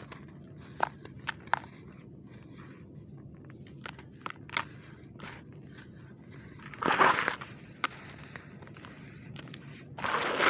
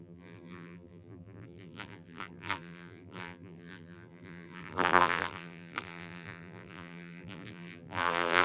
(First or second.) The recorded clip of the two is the first